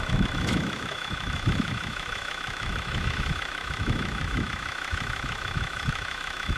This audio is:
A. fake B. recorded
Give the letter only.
A